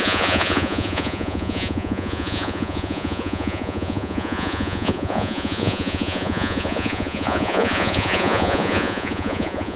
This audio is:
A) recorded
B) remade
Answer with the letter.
B